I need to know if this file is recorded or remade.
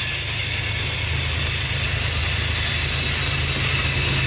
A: recorded